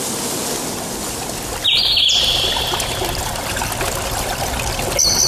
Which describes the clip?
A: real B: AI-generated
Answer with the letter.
A